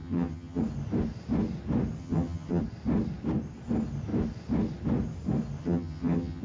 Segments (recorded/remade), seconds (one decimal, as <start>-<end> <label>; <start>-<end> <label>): 0.0-0.6 remade; 0.6-2.0 recorded; 2.0-2.6 remade; 2.6-5.6 recorded; 5.6-6.4 remade